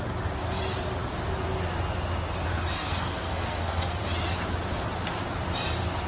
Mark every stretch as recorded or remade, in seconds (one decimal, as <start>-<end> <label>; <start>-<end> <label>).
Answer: 0.0-2.8 recorded; 2.8-4.0 remade; 4.0-6.1 recorded